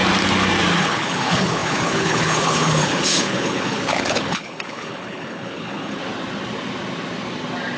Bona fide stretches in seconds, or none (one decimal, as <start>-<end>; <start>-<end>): 0.0-0.8; 6.0-7.8